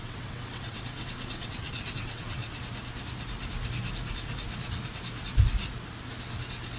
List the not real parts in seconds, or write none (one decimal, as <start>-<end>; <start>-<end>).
0.0-2.4